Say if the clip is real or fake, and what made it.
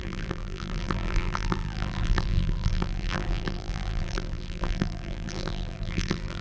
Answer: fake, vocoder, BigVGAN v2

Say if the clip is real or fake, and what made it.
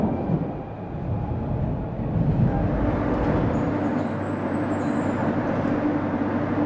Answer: real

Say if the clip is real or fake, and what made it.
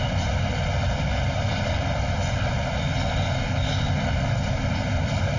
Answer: fake, vocoder, BigVGAN v2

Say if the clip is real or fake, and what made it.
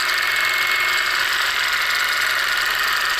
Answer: real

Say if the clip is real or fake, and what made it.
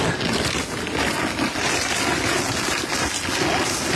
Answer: real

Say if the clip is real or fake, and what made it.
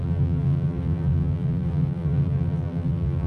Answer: fake, vocoder, BigVGAN v2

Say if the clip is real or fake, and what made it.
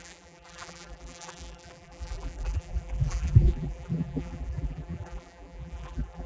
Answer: fake, vocoder, BigVGAN v2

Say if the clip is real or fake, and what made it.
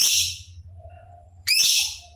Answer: fake, vocoder, BigVGAN v2